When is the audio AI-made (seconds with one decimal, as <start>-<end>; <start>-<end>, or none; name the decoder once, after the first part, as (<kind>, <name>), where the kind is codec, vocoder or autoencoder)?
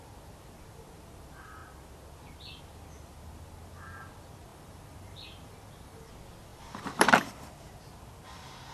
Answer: 4.5-6.1 (vocoder, BigVGAN v2); 6.5-7.5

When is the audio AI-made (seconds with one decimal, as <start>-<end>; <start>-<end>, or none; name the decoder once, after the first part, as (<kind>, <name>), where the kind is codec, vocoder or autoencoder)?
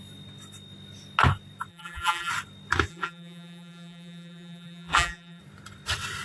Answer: 1.7-2.3 (vocoder, BigVGAN v2); 2.9-5.4